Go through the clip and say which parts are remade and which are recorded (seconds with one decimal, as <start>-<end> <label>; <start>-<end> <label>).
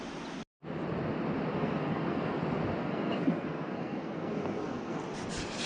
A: 0.0-1.5 recorded; 1.5-2.4 remade; 2.4-2.8 recorded; 2.8-5.0 remade; 5.0-5.7 recorded